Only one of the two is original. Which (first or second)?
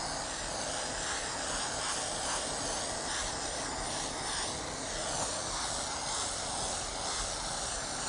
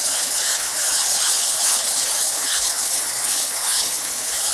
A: first